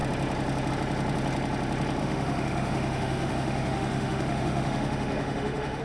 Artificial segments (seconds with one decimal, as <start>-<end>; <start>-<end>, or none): 2.0-5.8